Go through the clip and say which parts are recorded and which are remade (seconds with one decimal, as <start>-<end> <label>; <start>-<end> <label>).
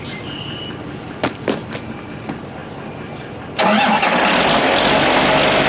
0.0-5.7 recorded